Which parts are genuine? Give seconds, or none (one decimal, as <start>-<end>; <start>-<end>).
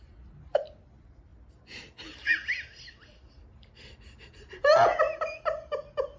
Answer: 0.0-6.2